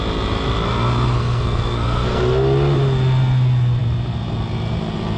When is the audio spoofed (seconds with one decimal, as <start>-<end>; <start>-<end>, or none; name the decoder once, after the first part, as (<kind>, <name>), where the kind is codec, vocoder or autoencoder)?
1.2-2.2 (codec, SNAC)